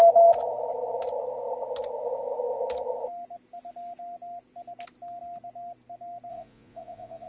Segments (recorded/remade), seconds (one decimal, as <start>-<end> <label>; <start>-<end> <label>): 0.0-6.3 recorded; 6.3-7.3 remade